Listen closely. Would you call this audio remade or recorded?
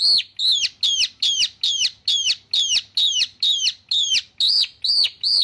recorded